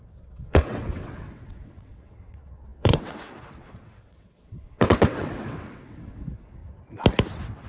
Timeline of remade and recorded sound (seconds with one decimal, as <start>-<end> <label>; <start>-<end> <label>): 0.0-6.6 remade; 6.6-7.3 recorded; 7.3-7.7 remade